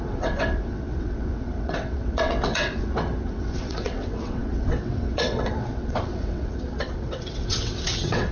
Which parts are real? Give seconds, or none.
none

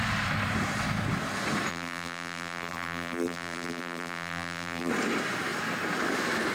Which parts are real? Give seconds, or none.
0.0-1.7; 4.9-6.5

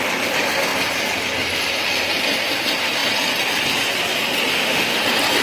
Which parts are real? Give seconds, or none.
0.0-4.5; 5.0-5.4

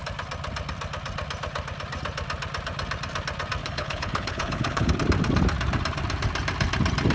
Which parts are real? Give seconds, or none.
0.0-3.6; 4.9-7.1

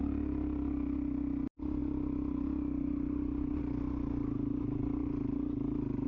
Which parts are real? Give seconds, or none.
0.0-6.1

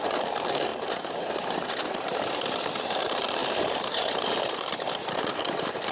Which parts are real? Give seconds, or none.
0.0-0.7; 2.4-3.4